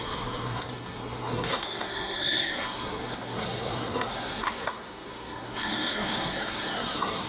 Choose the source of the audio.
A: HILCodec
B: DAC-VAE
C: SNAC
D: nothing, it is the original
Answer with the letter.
C